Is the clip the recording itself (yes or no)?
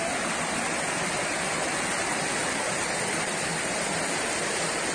yes